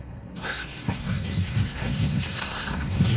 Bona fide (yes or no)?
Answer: no